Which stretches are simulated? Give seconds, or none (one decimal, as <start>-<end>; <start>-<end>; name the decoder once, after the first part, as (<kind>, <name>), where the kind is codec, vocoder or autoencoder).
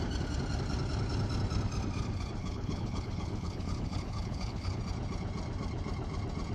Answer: 2.4-4.8 (codec, HILCodec)